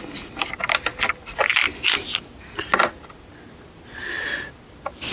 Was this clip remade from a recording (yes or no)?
no